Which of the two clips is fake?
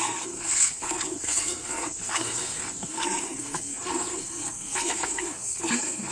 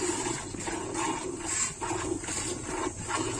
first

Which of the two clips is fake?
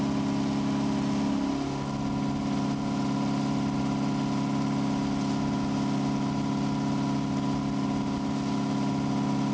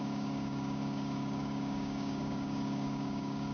second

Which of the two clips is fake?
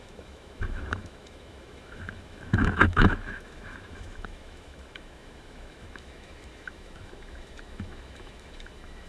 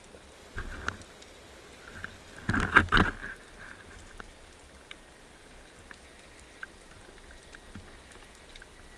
first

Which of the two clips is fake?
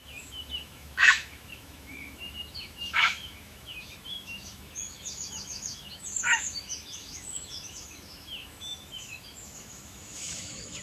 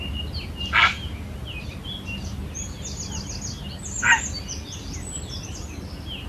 first